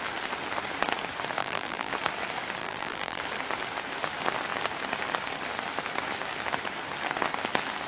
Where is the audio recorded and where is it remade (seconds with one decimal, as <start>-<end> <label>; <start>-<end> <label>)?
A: 0.0-1.4 recorded; 1.4-1.9 remade; 1.9-2.6 recorded; 2.6-3.2 remade; 3.2-7.9 recorded